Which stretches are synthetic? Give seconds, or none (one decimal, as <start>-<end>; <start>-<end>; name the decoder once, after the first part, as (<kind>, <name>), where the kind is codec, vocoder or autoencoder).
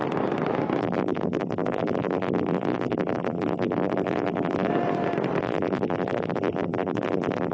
0.8-4.7 (vocoder, BigVGAN v2); 5.4-7.5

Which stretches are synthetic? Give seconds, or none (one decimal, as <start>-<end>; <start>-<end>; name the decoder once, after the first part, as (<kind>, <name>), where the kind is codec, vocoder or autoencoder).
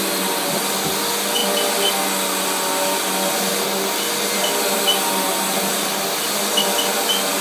none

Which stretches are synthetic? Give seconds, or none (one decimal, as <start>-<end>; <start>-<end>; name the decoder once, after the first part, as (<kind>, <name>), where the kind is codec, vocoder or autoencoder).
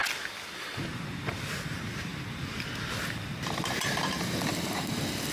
0.6-2.1 (vocoder, BigVGAN v2)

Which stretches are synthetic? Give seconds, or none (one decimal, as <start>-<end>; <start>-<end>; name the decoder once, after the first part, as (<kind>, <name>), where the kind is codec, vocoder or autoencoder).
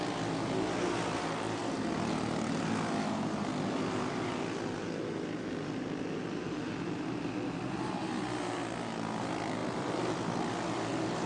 9.6-10.5 (vocoder, BigVGAN v2)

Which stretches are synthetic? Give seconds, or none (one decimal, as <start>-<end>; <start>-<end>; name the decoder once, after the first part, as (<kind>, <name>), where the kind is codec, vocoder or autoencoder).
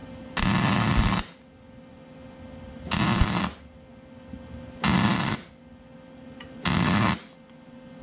none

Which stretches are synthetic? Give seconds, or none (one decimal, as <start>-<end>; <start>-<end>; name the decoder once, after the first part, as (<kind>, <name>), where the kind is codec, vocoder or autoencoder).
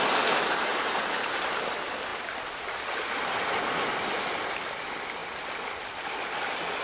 0.7-1.7 (vocoder, BigVGAN v2)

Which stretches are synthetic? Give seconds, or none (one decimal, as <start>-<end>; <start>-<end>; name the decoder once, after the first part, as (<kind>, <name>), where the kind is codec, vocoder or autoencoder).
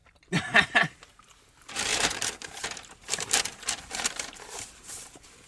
1.4-5.5 (vocoder, BigVGAN v2)